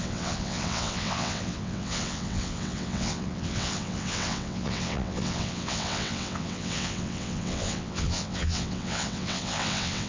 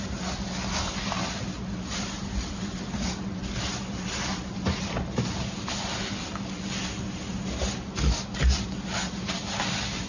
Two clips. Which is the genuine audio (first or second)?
second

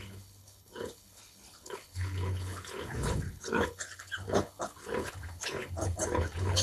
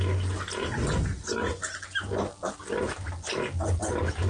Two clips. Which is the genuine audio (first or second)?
second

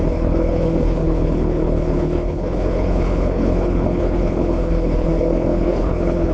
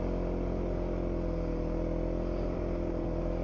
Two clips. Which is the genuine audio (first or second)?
second